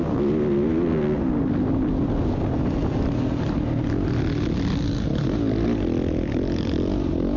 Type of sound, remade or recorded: recorded